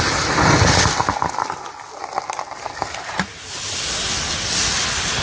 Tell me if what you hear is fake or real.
real